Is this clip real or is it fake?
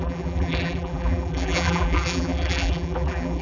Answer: fake